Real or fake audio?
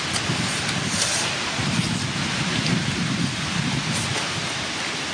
fake